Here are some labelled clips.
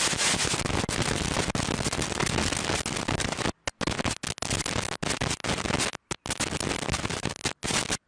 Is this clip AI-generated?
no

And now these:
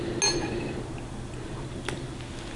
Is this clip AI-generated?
no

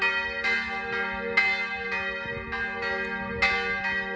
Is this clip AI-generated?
no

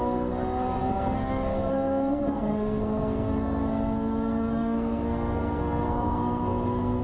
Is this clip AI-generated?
yes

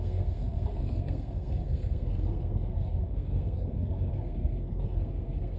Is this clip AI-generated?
yes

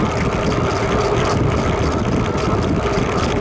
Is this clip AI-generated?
no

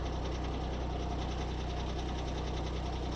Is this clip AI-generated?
no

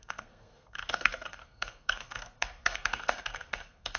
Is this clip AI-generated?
yes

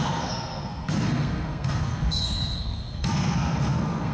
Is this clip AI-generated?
yes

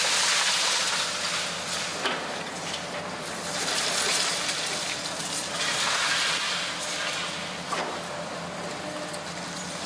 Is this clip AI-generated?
no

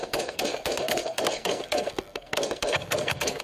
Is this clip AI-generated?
yes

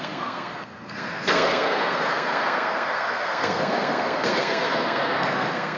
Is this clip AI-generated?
yes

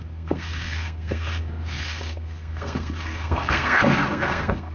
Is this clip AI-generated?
yes